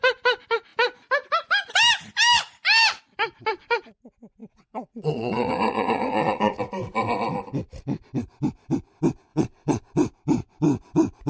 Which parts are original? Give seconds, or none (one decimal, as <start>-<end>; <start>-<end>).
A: 0.0-4.4; 6.6-9.3; 9.9-11.3